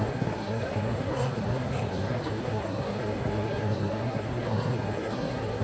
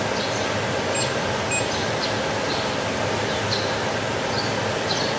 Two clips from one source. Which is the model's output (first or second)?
first